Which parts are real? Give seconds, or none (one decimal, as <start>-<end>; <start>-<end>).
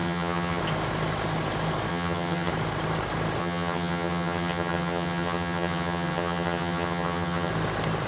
0.6-1.9; 2.5-3.4; 7.5-8.1